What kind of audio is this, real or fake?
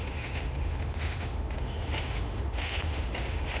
fake